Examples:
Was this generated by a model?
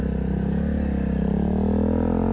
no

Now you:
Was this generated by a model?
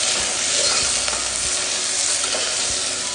no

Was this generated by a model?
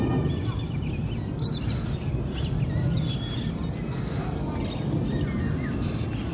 no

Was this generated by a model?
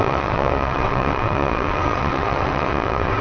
yes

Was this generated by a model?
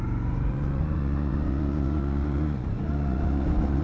yes